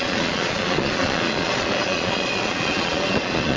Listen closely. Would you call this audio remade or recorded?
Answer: remade